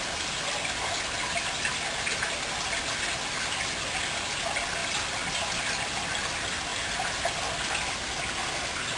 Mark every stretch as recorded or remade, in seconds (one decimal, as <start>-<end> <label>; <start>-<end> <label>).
0.0-9.0 recorded